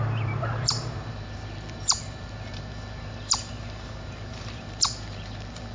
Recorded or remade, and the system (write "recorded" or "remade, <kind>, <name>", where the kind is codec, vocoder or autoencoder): remade, vocoder, BigVGAN v2